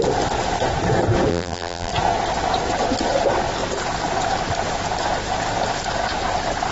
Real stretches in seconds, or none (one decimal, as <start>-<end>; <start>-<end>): 0.0-1.3; 1.9-6.7